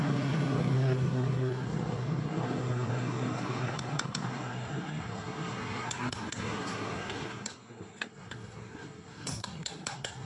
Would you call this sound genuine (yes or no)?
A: no